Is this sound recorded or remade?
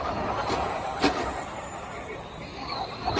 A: remade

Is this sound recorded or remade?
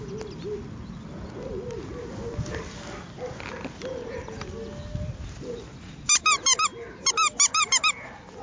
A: recorded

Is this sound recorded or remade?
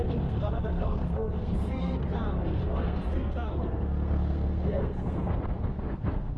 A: remade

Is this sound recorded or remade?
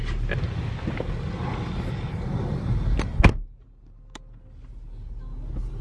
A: recorded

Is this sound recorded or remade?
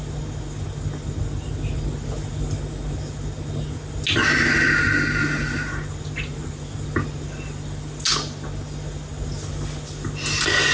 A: recorded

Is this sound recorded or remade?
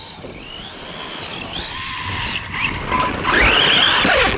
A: recorded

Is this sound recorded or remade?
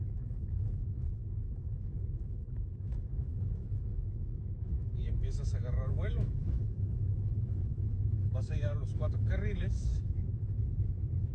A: remade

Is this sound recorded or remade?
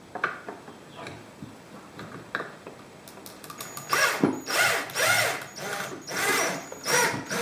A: recorded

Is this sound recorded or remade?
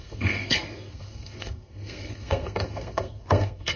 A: remade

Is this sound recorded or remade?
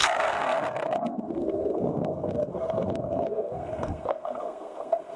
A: remade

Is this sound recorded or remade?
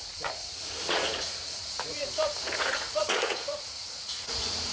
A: remade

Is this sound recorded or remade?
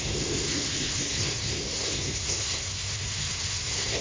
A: remade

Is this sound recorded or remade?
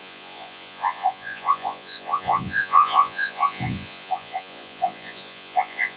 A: remade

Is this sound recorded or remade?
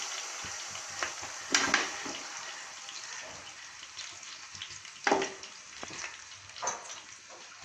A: recorded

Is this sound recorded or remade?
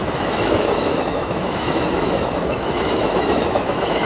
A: remade